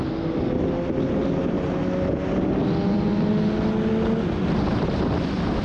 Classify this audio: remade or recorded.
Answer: recorded